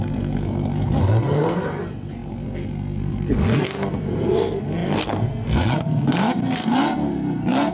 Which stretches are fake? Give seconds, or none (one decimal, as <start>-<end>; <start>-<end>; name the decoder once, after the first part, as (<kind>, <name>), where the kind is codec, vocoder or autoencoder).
0.0-7.7 (codec, SNAC)